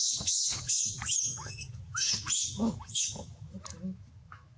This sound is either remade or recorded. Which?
remade